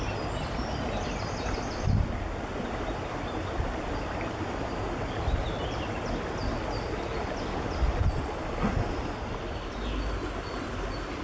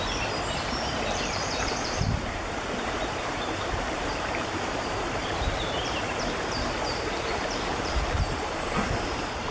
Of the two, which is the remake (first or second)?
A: second